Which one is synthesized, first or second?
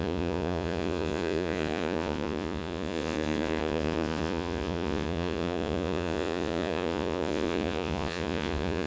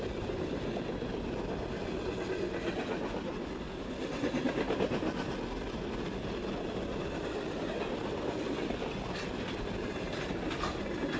first